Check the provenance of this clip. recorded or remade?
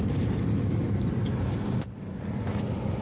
recorded